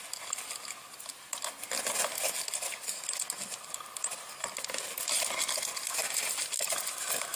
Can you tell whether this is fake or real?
real